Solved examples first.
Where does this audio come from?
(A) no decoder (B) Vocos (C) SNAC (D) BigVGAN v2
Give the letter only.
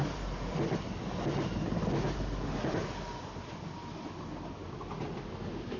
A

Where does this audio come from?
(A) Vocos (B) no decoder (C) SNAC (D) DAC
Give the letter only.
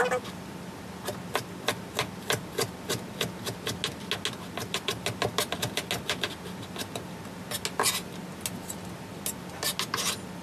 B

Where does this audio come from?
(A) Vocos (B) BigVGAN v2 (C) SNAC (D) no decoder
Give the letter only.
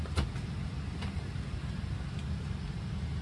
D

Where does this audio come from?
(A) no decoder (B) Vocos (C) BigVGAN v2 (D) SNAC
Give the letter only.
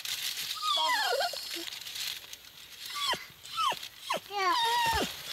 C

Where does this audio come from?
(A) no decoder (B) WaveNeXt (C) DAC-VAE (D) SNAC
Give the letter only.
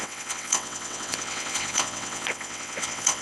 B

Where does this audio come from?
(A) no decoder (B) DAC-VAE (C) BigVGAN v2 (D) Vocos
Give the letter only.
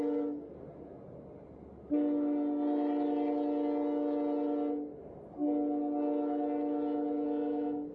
A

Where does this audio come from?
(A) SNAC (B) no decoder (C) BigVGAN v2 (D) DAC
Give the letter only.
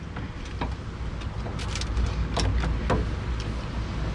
B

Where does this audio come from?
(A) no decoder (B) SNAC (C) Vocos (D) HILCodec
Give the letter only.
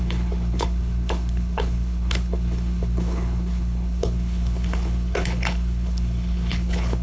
D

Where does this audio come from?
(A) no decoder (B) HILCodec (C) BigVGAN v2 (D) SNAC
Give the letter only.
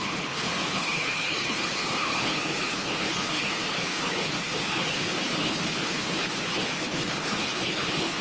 B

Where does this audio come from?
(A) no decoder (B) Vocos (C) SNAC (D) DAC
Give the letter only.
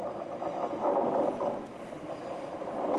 A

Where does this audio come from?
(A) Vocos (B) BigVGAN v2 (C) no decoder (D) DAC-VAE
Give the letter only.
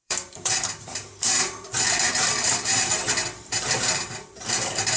B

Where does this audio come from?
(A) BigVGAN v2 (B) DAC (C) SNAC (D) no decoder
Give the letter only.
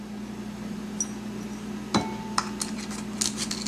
D